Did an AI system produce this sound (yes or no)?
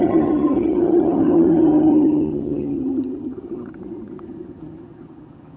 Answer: yes